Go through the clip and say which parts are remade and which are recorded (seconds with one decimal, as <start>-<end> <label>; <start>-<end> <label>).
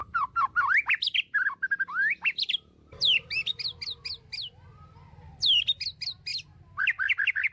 0.0-7.5 recorded